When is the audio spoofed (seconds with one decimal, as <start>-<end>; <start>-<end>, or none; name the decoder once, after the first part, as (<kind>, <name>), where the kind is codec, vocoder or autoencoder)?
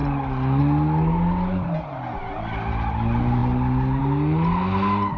none